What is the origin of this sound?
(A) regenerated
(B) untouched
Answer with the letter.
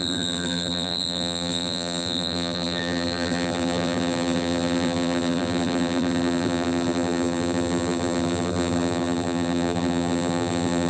A